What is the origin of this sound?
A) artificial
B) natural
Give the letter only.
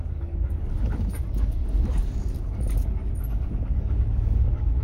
A